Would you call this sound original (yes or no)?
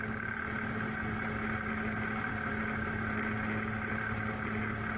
yes